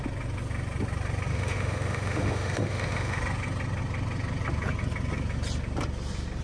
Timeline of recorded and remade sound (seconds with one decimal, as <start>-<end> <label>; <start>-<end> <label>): 0.0-1.3 recorded; 1.3-3.2 remade; 3.2-6.4 recorded